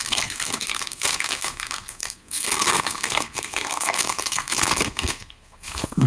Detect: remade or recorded remade